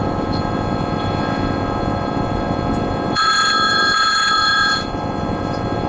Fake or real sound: fake